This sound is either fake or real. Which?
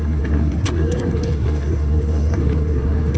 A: fake